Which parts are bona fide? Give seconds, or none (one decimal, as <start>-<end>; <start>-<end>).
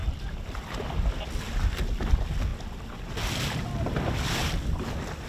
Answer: 0.0-5.3